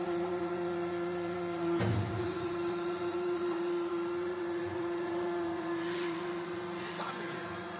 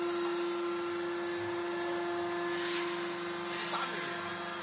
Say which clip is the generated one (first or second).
first